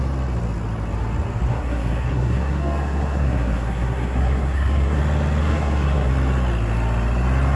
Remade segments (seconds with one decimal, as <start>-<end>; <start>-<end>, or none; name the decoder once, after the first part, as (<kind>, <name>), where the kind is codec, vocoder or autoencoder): 1.5-5.0 (codec, SNAC); 5.4-6.1